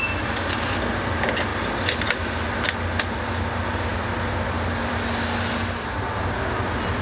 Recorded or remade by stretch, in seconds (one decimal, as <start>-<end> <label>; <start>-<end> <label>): 0.0-3.9 recorded; 3.9-4.9 remade; 4.9-7.0 recorded